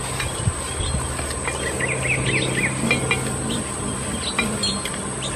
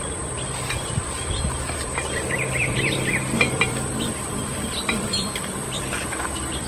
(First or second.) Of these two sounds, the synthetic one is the second